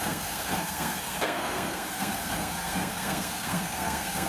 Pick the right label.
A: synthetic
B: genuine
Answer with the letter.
A